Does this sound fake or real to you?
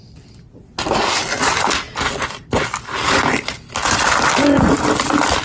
real